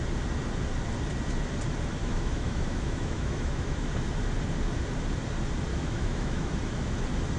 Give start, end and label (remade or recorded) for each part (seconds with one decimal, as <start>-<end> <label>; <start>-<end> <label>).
0.0-2.0 recorded; 2.0-3.9 remade; 3.9-5.7 recorded; 5.7-6.5 remade; 6.5-7.4 recorded